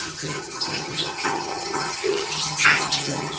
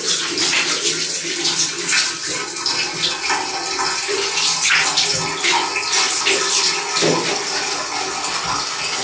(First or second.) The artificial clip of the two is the first